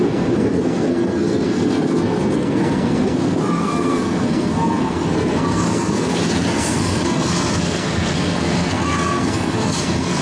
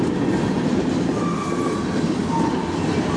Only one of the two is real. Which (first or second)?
second